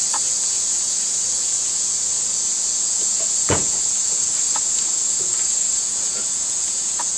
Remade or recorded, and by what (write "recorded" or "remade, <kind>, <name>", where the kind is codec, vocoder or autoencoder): remade, vocoder, Vocos